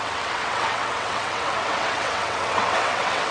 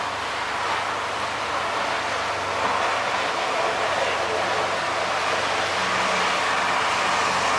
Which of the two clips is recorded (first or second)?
second